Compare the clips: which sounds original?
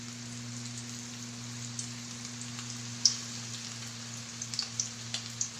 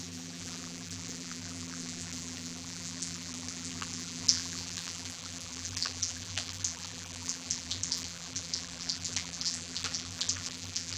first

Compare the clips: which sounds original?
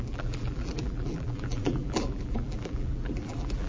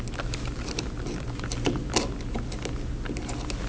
second